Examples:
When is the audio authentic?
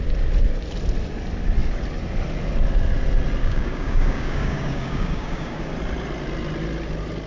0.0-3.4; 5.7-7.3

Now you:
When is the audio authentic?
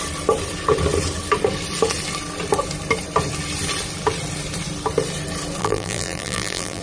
0.0-5.6